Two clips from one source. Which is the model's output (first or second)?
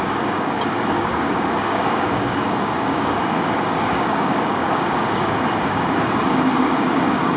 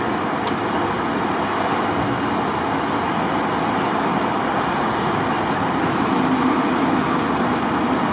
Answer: first